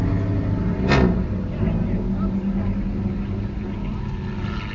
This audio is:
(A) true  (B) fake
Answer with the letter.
A